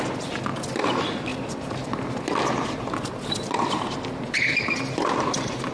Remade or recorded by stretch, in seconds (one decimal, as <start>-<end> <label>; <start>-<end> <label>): 0.0-5.7 recorded